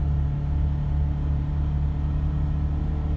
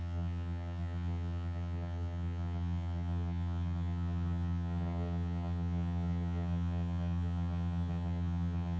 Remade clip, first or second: second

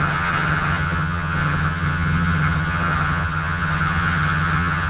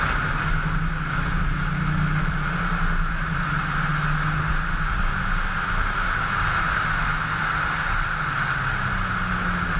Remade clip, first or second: first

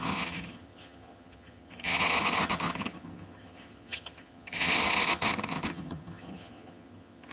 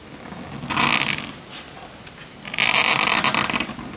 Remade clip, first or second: first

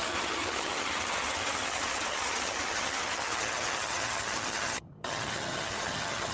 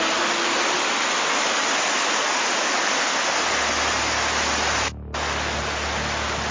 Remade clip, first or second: first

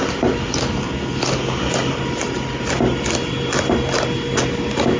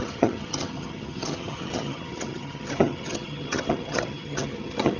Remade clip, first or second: second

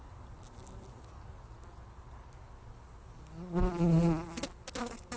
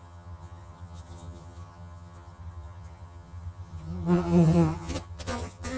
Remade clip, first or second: second